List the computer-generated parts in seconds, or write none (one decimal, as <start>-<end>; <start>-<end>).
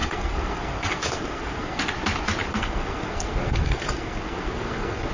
0.0-1.8; 2.5-5.1